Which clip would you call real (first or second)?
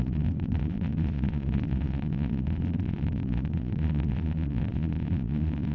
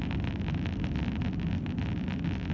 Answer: second